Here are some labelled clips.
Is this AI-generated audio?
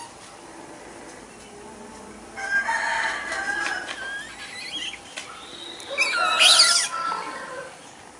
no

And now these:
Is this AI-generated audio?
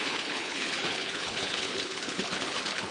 yes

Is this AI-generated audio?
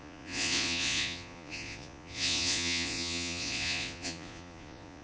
yes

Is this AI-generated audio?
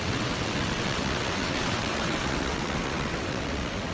yes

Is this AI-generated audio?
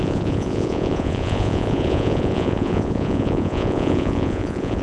yes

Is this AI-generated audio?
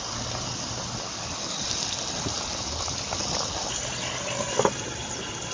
no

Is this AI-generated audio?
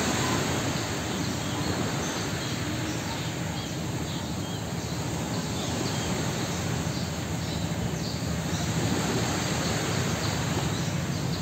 no